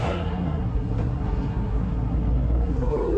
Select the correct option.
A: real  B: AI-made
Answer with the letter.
B